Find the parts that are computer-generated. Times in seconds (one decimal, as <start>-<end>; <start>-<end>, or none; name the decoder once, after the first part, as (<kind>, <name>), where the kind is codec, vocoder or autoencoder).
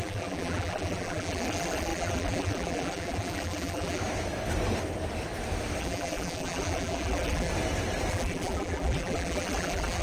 0.0-4.0 (vocoder, BigVGAN v2); 5.8-7.5; 8.1-10.0